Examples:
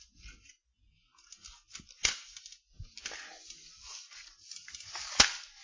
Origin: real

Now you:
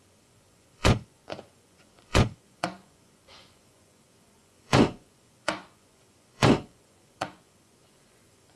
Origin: fake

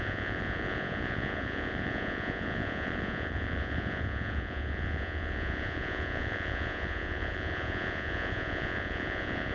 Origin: fake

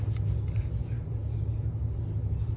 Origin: real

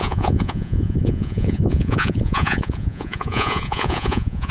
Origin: fake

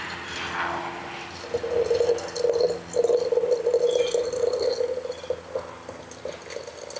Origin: real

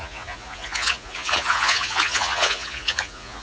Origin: fake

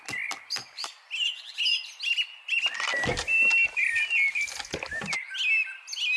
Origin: real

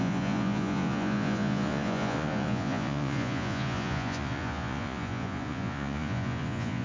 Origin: fake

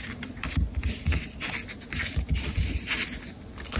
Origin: real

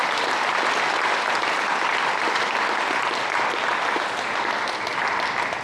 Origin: real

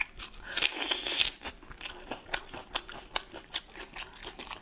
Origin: real